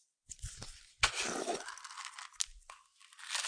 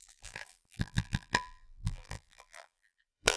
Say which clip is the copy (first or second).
second